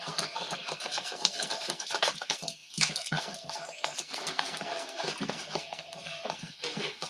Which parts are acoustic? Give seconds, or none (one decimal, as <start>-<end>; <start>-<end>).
none